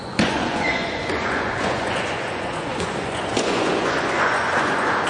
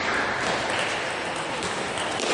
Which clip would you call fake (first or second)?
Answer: first